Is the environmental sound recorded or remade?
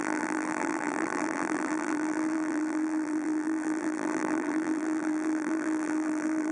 remade